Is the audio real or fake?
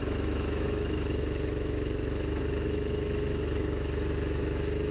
fake